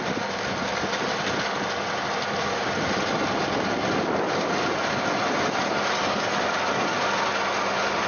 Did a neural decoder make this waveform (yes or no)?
no